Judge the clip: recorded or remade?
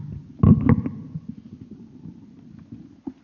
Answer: recorded